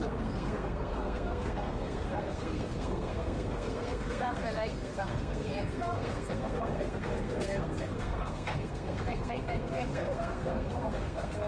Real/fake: fake